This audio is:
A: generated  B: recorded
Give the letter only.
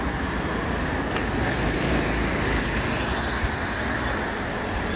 B